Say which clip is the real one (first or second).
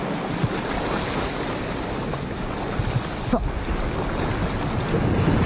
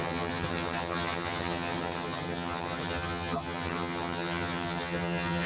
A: first